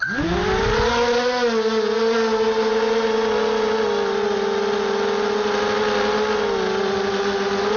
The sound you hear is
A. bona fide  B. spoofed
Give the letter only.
A